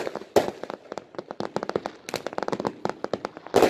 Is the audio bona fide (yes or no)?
yes